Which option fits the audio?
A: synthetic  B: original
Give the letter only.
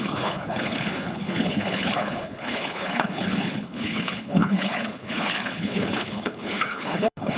A